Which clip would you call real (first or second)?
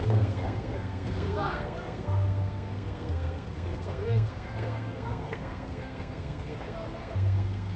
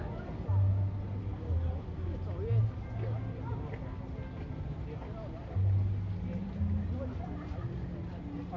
second